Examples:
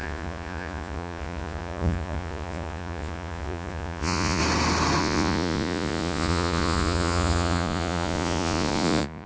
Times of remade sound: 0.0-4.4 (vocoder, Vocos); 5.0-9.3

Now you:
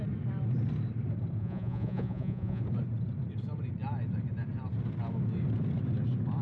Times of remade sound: 1.4-2.6 (vocoder, Vocos)